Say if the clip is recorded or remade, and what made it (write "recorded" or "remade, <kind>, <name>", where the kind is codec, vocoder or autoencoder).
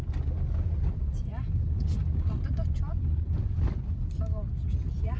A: recorded